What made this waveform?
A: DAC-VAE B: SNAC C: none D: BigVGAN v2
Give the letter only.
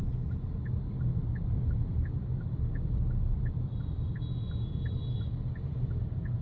C